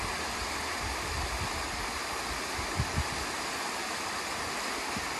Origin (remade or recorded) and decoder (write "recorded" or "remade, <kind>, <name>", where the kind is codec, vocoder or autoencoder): recorded